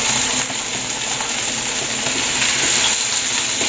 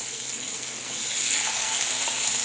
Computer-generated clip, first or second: second